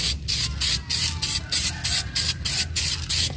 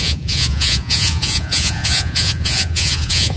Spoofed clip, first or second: second